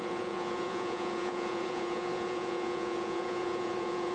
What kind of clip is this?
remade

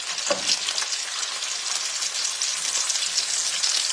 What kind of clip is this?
recorded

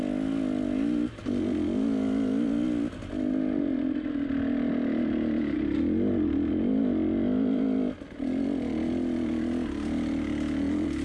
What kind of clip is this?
recorded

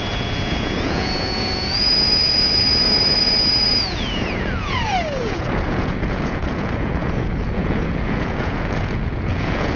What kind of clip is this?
remade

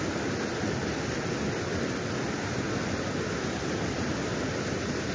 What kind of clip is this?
recorded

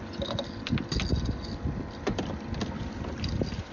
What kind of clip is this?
recorded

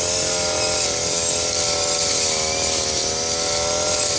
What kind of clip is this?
recorded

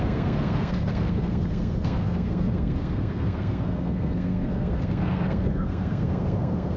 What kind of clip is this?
remade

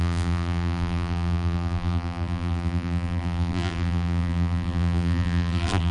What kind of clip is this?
remade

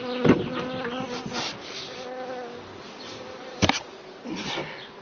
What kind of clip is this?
recorded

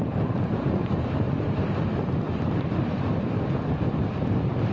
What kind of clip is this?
remade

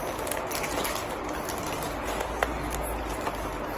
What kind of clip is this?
recorded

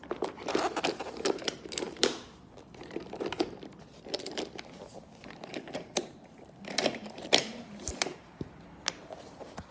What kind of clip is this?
remade